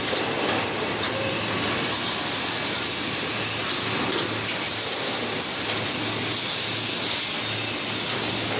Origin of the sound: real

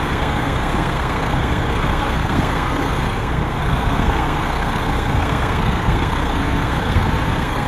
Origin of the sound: fake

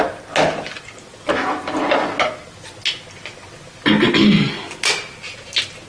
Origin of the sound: real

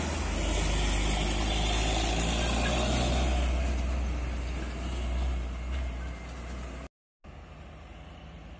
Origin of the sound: real